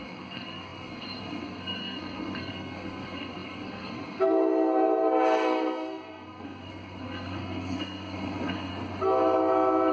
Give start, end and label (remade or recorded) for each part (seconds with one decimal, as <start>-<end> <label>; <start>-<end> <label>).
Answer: 0.0-8.7 remade; 8.7-9.9 recorded